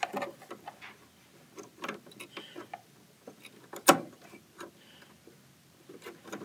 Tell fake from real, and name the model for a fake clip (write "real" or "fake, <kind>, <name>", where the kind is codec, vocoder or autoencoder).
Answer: real